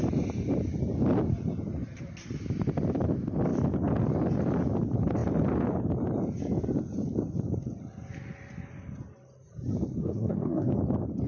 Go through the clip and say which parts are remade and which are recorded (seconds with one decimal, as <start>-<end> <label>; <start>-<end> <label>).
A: 0.0-10.0 recorded; 10.0-10.7 remade; 10.7-11.3 recorded